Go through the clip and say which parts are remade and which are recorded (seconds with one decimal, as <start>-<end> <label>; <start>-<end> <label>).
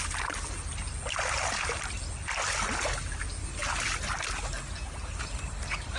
0.0-6.0 recorded